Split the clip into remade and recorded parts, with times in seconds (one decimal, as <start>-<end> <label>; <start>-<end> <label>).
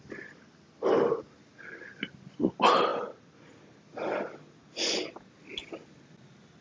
0.0-6.6 recorded